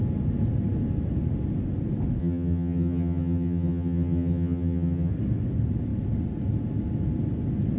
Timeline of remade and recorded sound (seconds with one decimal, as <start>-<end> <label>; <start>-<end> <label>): 0.0-2.2 recorded; 2.2-5.1 remade; 5.1-7.8 recorded